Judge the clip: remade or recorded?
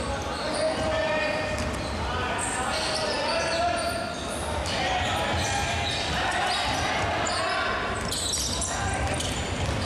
recorded